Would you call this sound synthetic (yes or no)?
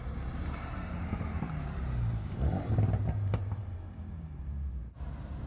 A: yes